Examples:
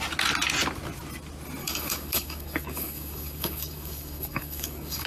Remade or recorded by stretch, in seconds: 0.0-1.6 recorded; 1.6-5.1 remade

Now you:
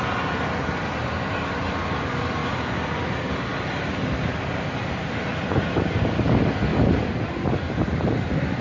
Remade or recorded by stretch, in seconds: 0.0-8.6 recorded

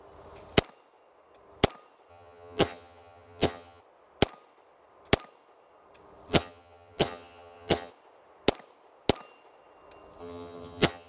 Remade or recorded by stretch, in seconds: 0.0-2.1 recorded; 2.1-3.8 remade; 3.8-6.3 recorded; 6.3-7.9 remade; 7.9-10.2 recorded; 10.2-11.1 remade

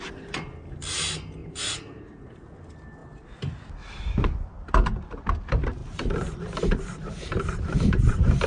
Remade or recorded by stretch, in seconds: 0.0-1.4 recorded; 1.4-2.5 remade; 2.5-5.8 recorded; 5.8-8.5 remade

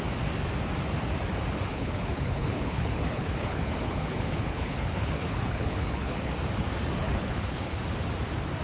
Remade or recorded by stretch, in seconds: 0.0-1.7 recorded; 1.7-6.3 remade; 6.3-7.0 recorded; 7.0-7.8 remade; 7.8-8.6 recorded

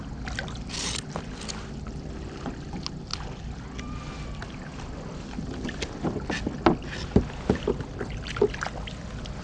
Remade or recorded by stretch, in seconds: 0.0-9.4 recorded

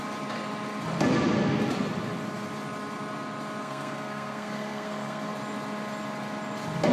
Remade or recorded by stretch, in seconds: 0.0-3.6 recorded; 3.6-5.3 remade; 5.3-6.9 recorded